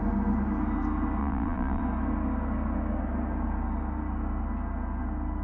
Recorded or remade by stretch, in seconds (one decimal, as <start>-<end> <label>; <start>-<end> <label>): 0.0-1.2 recorded; 1.2-1.8 remade; 1.8-5.4 recorded